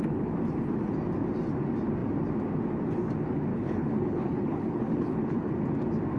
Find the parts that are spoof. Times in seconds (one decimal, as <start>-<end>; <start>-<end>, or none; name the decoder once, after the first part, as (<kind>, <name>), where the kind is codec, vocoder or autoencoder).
3.5-5.5 (codec, HILCodec)